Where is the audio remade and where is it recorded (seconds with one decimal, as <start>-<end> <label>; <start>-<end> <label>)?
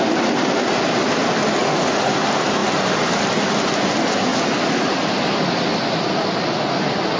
0.0-1.6 recorded; 1.6-2.2 remade; 2.2-7.2 recorded